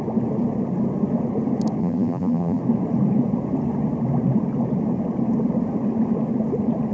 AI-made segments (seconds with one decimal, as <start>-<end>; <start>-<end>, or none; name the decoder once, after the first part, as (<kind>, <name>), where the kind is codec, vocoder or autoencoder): 1.8-2.6 (vocoder, BigVGAN v2)